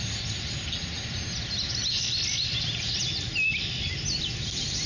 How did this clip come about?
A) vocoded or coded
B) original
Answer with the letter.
B